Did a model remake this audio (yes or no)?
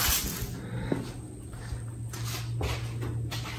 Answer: no